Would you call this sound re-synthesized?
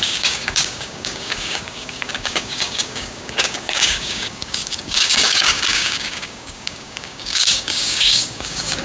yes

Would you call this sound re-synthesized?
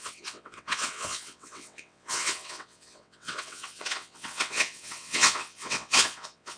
yes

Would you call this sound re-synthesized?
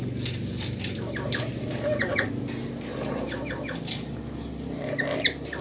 no